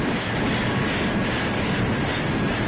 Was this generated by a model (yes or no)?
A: no